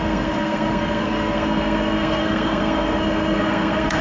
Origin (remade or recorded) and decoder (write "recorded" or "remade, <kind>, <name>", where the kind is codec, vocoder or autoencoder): remade, codec, SNAC